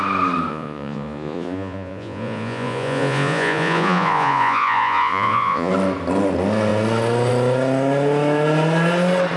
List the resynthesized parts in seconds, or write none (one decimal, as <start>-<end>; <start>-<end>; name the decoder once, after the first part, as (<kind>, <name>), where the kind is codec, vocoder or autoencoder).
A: 0.5-5.7 (vocoder, Vocos)